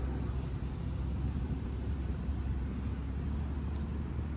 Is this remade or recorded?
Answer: recorded